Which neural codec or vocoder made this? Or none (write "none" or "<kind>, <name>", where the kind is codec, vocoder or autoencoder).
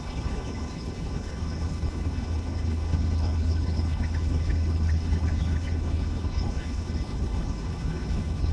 codec, HILCodec